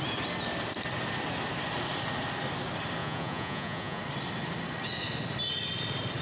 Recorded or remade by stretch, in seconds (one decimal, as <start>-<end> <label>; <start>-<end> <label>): 0.0-3.0 recorded; 3.0-4.0 remade; 4.0-6.2 recorded